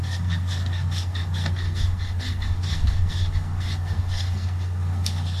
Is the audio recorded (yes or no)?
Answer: no